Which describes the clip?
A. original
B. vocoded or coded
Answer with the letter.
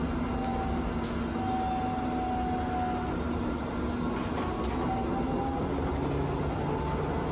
A